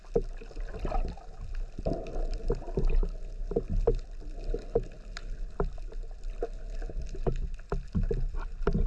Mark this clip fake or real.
real